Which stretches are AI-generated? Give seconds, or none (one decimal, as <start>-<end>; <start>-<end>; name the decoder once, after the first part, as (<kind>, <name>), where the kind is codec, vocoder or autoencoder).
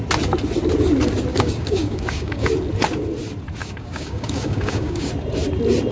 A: 1.3-2.5 (codec, DAC); 3.6-5.1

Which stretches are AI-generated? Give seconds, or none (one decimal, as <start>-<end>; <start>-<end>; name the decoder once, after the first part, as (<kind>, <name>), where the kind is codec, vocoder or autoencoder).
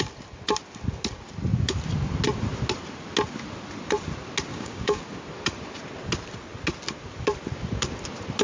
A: 4.5-5.0 (codec, DAC)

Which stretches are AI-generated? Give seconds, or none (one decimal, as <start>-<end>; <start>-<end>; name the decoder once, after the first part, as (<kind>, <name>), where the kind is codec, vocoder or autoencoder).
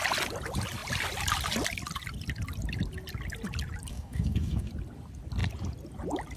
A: 3.9-4.7 (codec, DAC)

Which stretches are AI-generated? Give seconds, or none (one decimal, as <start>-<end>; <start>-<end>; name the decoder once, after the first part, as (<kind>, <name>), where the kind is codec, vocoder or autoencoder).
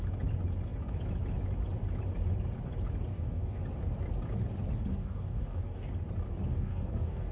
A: 3.1-3.6 (codec, DAC); 5.0-5.9; 6.5-7.3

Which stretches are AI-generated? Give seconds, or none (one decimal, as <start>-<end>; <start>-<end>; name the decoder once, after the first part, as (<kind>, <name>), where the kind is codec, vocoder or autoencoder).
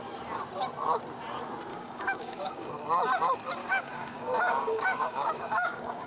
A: 1.7-2.7 (codec, DAC); 3.6-6.1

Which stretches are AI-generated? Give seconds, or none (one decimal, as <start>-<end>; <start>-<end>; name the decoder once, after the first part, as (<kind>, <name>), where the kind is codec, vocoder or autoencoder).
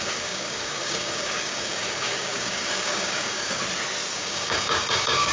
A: 0.0-3.6 (codec, DAC); 4.1-5.3